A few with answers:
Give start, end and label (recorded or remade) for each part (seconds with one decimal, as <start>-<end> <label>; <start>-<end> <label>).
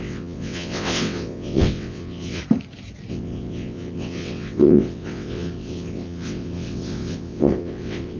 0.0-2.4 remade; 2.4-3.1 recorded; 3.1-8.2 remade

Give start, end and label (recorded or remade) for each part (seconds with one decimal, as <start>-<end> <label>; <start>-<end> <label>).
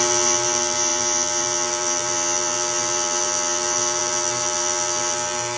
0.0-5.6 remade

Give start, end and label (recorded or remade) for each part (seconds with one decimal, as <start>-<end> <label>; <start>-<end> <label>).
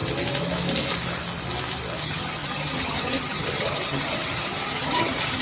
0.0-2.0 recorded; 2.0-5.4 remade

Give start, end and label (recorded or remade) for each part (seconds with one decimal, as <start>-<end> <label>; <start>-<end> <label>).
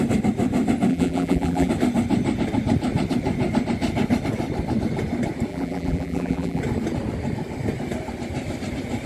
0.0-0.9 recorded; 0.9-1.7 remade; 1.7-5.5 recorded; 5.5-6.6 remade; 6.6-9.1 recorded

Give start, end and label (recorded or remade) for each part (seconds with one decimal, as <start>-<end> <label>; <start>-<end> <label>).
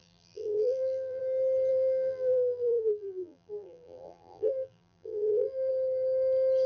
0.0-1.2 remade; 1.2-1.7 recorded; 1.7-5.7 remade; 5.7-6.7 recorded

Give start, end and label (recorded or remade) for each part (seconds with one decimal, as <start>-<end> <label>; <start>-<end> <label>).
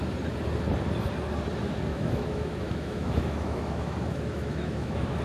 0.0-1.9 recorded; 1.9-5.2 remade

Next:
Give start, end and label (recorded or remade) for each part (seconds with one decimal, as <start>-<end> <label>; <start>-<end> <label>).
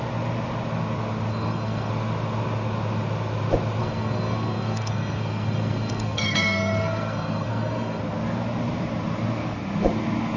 0.0-1.3 recorded; 1.3-1.9 remade; 1.9-3.8 recorded; 3.8-8.0 remade; 8.0-10.4 recorded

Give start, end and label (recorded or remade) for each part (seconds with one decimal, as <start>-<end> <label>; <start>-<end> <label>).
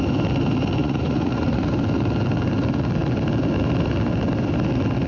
0.0-0.8 recorded; 0.8-1.6 remade; 1.6-5.1 recorded